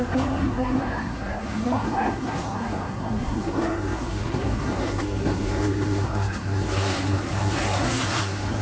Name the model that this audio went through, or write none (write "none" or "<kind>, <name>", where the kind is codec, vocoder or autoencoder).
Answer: codec, SNAC